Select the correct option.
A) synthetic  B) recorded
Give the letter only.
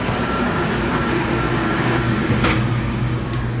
A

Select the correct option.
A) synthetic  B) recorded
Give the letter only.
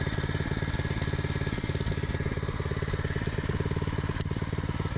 B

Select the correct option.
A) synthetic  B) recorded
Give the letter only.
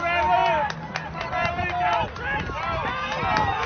B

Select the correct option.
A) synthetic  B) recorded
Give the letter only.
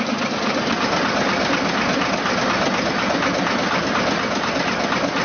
B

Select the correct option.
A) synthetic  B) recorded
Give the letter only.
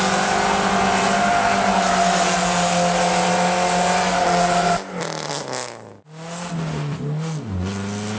B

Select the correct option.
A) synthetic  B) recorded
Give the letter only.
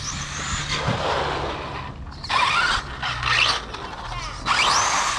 B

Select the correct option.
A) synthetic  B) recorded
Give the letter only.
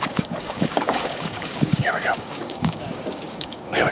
A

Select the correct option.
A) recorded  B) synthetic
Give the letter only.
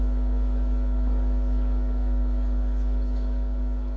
B